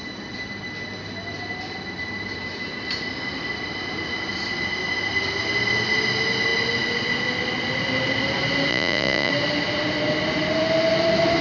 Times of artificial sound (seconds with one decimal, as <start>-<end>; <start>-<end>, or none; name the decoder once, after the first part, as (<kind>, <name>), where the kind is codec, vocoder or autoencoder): 8.7-9.3 (vocoder, Vocos)